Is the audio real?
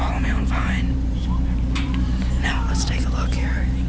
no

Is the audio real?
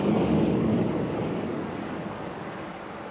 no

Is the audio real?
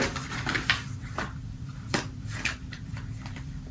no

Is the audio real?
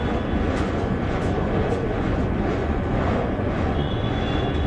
no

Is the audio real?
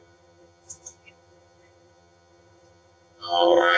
no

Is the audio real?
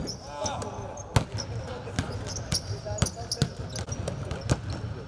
yes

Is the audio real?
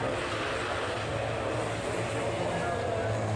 yes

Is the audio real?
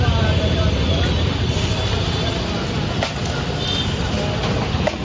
yes